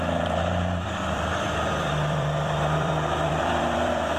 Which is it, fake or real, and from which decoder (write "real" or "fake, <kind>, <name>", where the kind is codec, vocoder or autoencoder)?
fake, vocoder, BigVGAN v2